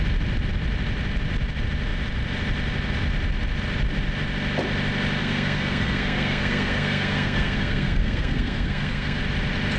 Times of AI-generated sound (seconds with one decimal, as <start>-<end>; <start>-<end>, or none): 5.2-9.2